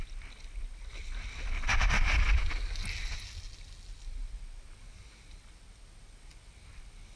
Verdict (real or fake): real